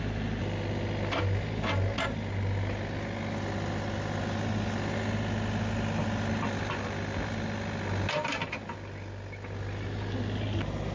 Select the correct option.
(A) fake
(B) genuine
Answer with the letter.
B